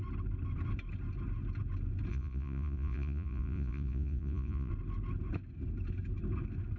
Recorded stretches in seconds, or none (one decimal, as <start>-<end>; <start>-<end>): 0.0-2.1; 4.7-6.8

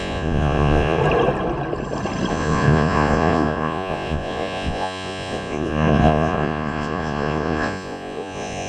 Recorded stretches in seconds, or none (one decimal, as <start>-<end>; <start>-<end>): 1.0-2.3

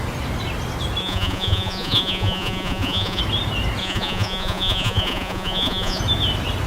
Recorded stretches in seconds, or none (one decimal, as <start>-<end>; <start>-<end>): 0.0-1.0; 3.2-3.8; 6.0-6.7

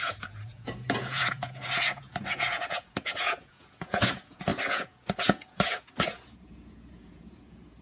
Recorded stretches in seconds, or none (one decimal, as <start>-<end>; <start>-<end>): none